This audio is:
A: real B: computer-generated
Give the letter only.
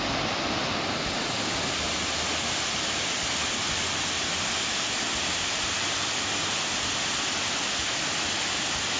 A